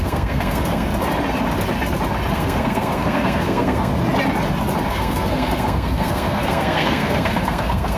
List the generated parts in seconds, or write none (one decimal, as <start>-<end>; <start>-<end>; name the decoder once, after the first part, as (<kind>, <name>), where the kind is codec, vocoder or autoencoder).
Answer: 0.0-0.9 (codec, SNAC); 2.3-3.9; 4.9-8.0